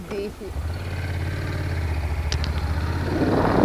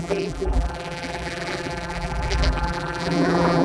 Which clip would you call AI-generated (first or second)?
second